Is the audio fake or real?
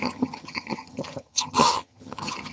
fake